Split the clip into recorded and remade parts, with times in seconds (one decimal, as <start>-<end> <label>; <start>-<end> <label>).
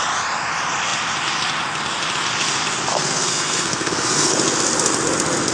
0.0-2.9 recorded; 2.9-4.3 remade; 4.3-5.5 recorded